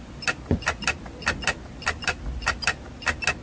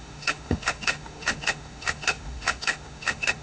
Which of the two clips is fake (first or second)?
second